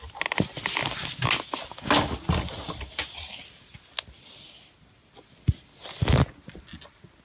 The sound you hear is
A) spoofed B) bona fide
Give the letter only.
B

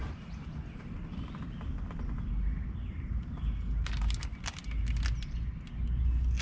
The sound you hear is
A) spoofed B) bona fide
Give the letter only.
B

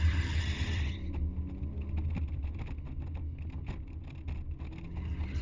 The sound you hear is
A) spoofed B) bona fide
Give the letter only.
B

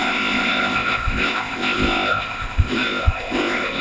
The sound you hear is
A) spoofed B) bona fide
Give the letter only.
A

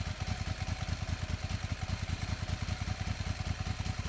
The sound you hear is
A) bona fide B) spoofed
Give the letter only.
A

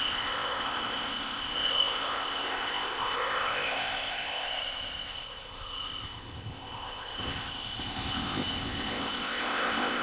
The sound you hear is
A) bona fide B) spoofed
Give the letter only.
B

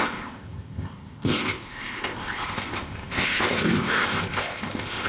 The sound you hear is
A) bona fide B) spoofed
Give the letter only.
B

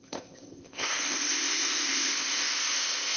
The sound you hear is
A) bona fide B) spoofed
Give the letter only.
B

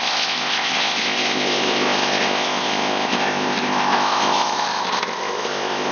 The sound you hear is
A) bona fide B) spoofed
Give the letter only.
B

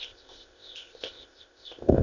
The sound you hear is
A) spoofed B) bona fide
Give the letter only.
A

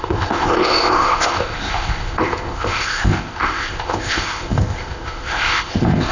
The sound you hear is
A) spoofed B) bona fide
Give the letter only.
A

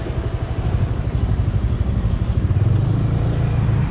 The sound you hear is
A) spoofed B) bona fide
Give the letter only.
B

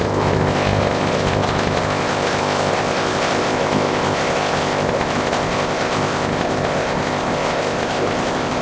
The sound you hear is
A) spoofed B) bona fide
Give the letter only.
A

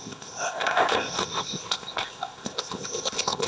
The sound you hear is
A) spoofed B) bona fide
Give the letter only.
A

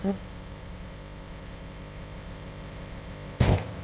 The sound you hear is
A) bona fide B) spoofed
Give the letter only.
B